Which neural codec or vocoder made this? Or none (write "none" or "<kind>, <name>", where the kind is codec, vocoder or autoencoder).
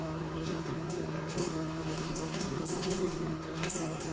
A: codec, SNAC